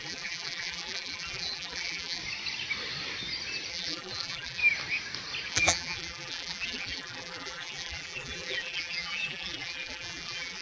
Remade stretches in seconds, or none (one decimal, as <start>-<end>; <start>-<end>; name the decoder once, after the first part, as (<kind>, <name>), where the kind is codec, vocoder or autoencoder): 0.0-2.2 (vocoder, BigVGAN v2); 3.7-4.6; 5.5-10.6